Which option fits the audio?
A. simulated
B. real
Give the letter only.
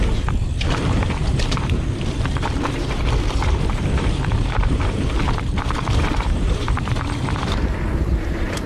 A